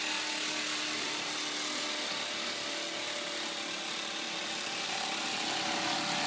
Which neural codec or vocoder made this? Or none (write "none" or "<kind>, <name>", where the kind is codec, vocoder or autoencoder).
none